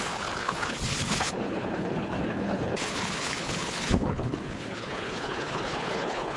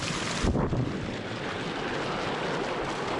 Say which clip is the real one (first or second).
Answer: second